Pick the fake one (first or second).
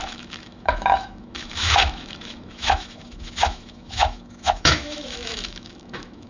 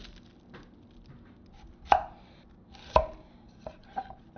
first